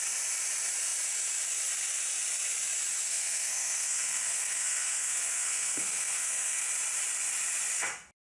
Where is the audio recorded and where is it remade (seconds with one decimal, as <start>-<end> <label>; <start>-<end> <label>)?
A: 0.0-3.1 recorded; 3.1-6.7 remade; 6.7-8.3 recorded